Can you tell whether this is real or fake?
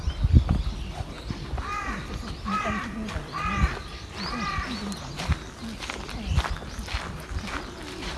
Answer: real